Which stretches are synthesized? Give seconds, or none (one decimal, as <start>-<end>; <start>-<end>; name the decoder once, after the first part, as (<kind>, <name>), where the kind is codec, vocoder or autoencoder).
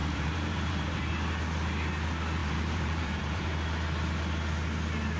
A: 0.0-1.1 (vocoder, BigVGAN v2); 2.4-3.5